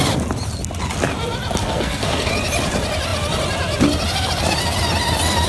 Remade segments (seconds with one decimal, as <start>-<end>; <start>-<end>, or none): 1.6-2.3